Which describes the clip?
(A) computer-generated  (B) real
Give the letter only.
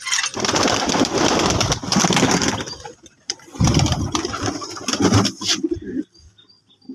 A